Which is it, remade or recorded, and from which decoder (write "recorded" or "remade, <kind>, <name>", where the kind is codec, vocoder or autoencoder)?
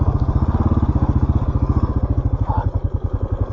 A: recorded